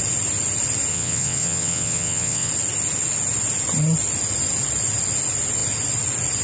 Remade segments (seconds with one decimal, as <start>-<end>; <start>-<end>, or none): 0.9-2.5

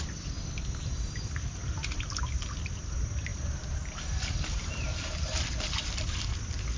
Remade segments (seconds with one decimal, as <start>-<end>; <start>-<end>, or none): none

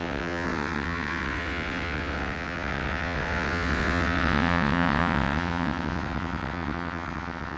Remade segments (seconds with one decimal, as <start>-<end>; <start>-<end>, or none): 0.0-7.6

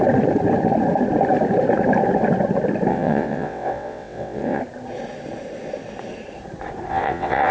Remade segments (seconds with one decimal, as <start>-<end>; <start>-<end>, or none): 2.9-4.6; 6.9-7.5

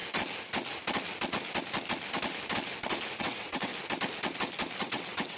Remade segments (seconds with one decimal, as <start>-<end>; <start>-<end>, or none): 3.2-3.7; 4.8-5.4

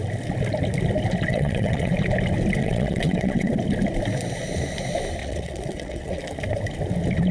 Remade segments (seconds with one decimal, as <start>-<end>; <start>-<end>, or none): 1.3-1.9; 2.6-3.5; 5.2-6.2

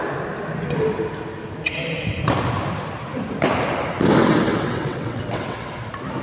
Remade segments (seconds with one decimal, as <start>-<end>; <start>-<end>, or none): 4.2-5.7

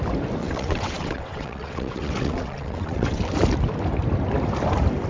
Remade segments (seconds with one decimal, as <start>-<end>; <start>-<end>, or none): 0.4-3.2